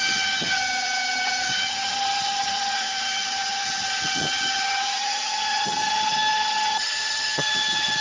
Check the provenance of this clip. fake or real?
fake